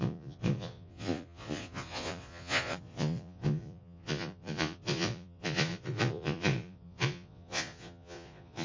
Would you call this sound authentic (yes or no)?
no